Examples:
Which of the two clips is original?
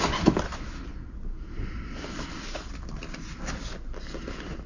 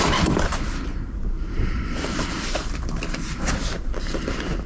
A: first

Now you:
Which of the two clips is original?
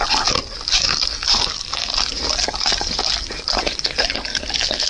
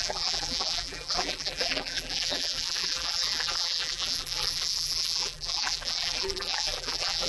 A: first